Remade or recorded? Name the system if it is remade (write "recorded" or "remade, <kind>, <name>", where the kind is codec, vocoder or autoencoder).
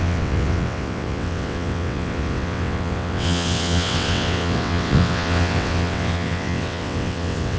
remade, vocoder, WaveNeXt